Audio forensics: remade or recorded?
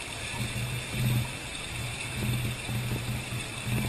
recorded